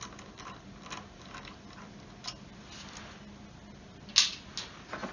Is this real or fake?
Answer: real